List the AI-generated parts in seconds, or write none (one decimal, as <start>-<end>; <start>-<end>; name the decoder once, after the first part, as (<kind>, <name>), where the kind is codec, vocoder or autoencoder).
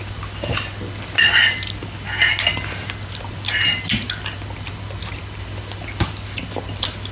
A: none